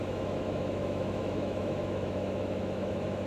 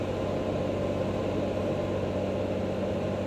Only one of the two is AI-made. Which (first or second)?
first